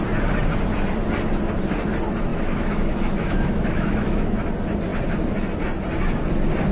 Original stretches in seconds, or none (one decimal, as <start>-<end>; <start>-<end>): 0.0-2.3; 4.4-6.7